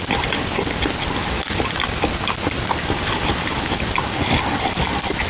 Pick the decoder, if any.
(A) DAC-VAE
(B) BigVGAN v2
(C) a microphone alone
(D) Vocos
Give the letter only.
C